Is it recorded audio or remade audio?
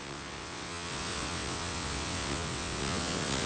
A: remade